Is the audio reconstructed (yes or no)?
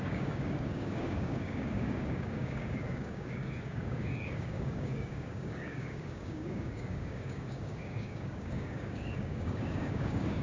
yes